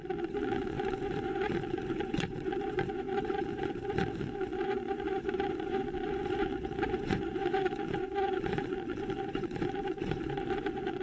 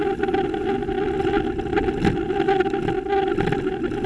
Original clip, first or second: second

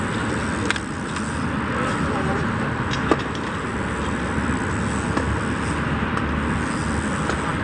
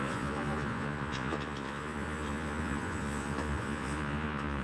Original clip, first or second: first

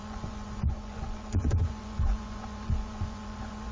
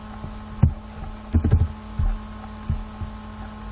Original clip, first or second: second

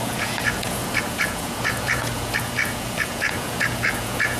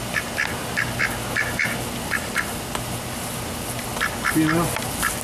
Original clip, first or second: second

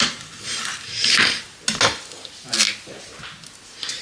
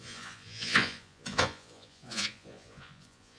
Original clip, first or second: first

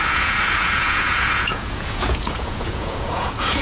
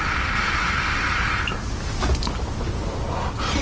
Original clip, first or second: second